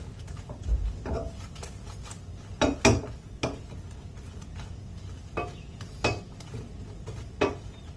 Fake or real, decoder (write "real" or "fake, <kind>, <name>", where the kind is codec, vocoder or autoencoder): real